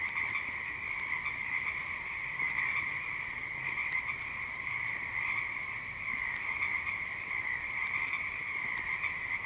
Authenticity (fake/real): real